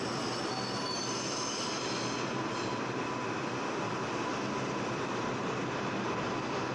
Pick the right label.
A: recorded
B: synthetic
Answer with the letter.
A